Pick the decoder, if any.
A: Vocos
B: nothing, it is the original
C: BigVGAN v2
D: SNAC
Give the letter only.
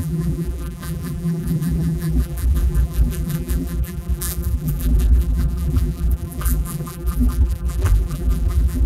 C